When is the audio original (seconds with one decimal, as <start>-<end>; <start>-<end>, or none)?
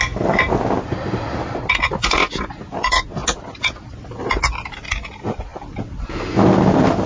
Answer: 0.0-7.1